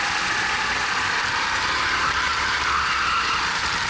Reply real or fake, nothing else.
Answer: real